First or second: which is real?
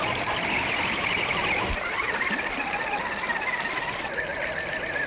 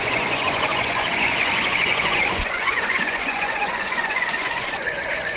first